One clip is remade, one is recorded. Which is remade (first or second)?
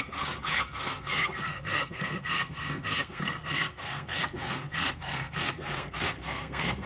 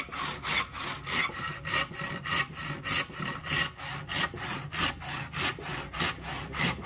first